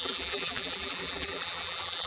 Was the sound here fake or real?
fake